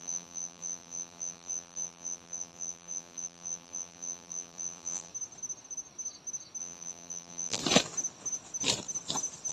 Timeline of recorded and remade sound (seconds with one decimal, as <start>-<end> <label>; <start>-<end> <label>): 0.0-5.1 remade; 5.1-6.6 recorded; 6.6-7.6 remade; 7.6-9.5 recorded